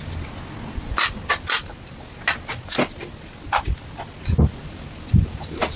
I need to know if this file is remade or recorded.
recorded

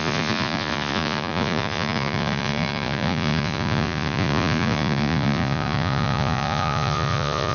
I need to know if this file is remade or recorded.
remade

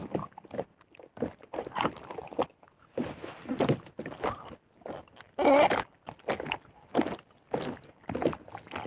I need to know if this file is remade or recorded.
recorded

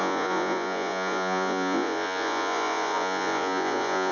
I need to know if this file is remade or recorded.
remade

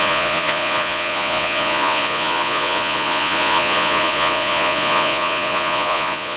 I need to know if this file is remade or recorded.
remade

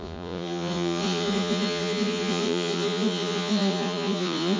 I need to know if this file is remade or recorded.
remade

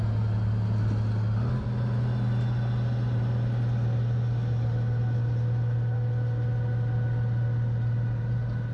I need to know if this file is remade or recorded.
recorded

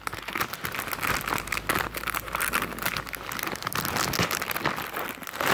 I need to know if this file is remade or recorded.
recorded